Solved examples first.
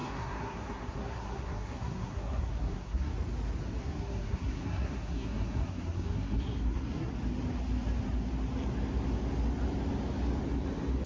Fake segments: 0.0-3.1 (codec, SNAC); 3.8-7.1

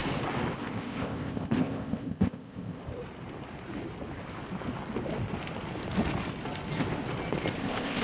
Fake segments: 0.6-2.8 (codec, ZipCodec); 7.6-8.0

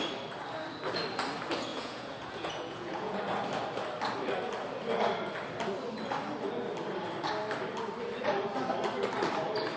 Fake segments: 1.7-3.2 (vocoder, Vocos)

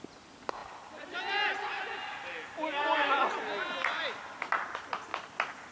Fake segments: none

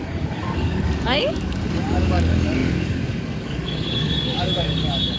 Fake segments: 0.0-5.2 (codec, DAC)

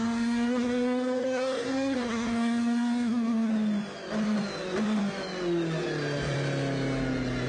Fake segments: 0.0-3.5 (codec, SNAC)